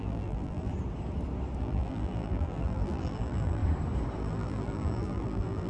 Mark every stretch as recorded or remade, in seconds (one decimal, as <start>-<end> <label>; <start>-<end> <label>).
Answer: 0.0-0.7 remade; 0.7-1.6 recorded; 1.6-3.6 remade; 3.6-4.2 recorded; 4.2-5.7 remade